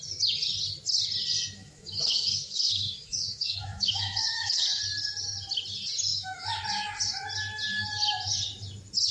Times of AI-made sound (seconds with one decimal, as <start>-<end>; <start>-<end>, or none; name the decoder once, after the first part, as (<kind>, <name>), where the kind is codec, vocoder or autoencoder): 1.6-4.8 (autoencoder, DAC-VAE); 6.1-6.6